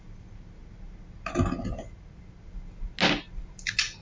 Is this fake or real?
real